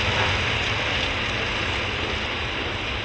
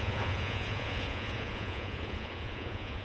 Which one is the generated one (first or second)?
second